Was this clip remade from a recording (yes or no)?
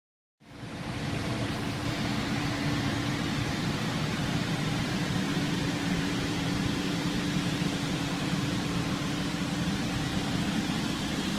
yes